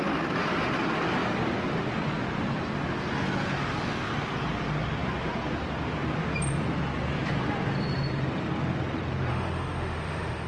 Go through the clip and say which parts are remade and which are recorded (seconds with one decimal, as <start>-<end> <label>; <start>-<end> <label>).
0.0-9.3 recorded; 9.3-10.5 remade